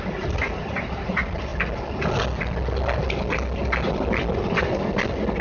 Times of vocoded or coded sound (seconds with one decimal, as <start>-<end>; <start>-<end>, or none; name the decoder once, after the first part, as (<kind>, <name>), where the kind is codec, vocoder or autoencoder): 0.0-1.5 (vocoder, BigVGAN v2); 4.1-5.4